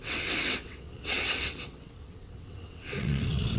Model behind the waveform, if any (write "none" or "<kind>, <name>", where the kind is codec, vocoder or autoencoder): vocoder, WaveNeXt